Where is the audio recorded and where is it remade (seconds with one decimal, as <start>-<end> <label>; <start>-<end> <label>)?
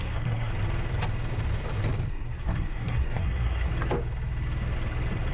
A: 0.0-0.5 remade; 0.5-2.1 recorded; 2.1-3.7 remade; 3.7-5.3 recorded